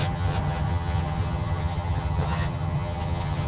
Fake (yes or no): yes